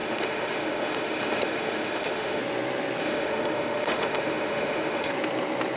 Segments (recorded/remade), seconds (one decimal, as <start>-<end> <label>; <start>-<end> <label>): 0.0-2.4 remade; 2.4-3.0 recorded; 3.0-5.1 remade; 5.1-5.8 recorded